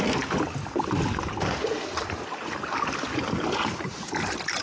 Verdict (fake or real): real